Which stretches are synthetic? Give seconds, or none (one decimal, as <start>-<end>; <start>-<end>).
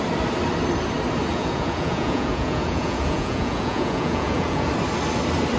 1.3-4.7